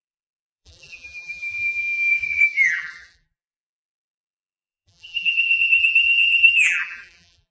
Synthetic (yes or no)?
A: yes